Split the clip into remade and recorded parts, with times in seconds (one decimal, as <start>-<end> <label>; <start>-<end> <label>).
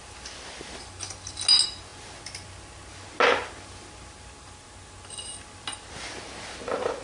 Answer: 0.0-7.0 recorded